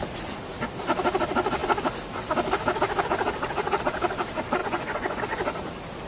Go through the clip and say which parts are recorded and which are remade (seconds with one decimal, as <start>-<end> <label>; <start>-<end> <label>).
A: 0.0-4.6 recorded; 4.6-5.2 remade; 5.2-6.1 recorded